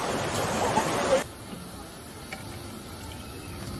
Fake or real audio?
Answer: real